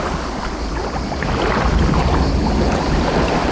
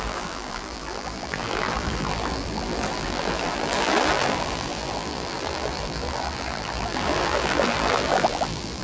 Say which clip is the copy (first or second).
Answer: second